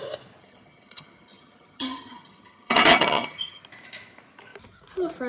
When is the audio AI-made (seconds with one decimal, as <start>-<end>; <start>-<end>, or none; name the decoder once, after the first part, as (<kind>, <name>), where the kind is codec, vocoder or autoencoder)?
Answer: 0.4-3.6 (vocoder, HiFi-GAN)